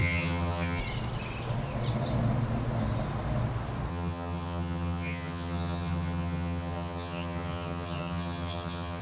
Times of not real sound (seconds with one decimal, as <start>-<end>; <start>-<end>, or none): 0.0-0.8; 3.9-9.0